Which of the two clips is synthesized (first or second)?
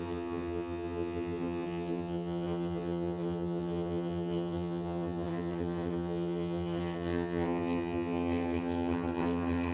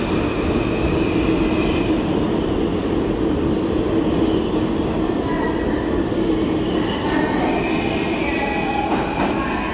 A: first